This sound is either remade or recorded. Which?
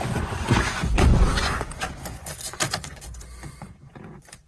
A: remade